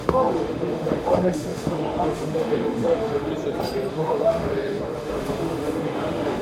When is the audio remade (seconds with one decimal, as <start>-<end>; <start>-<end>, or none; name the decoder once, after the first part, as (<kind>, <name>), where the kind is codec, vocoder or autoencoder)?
0.0-3.3 (autoencoder, DAC-VAE); 3.9-6.4